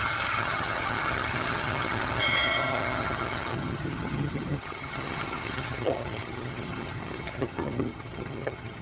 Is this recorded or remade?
remade